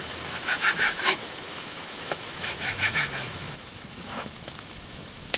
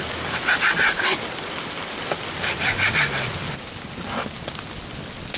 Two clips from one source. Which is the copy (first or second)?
first